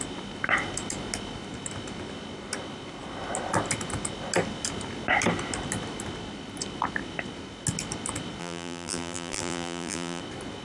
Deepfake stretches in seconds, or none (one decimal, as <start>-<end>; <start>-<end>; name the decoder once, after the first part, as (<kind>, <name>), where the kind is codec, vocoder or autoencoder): 8.4-10.2 (vocoder, BigVGAN v2)